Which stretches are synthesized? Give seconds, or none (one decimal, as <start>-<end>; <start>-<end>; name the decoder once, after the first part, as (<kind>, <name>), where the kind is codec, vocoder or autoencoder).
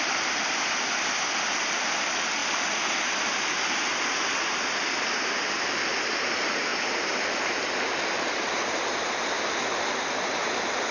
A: none